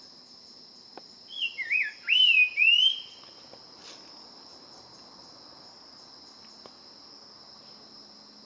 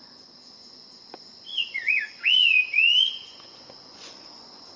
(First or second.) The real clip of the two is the first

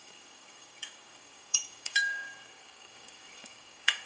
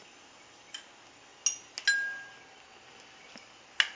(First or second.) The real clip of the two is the second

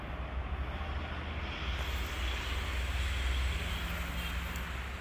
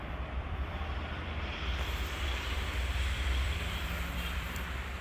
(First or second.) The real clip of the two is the first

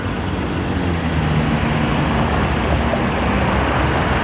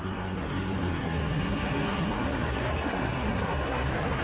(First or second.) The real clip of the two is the first